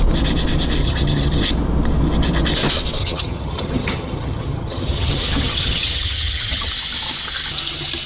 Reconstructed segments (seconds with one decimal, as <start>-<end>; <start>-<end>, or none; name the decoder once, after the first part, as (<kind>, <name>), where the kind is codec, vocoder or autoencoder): 0.8-1.4 (vocoder, HiFi-GAN); 3.0-6.7